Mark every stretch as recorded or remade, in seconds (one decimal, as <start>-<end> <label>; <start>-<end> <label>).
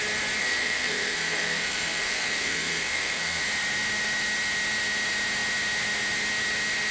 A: 0.0-0.4 recorded; 0.4-3.4 remade; 3.4-6.9 recorded